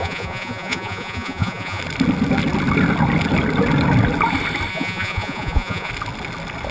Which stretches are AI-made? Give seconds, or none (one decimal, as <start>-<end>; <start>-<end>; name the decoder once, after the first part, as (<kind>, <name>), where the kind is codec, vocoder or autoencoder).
0.0-1.8 (vocoder, Vocos); 4.7-5.9